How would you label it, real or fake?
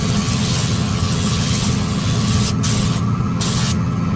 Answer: fake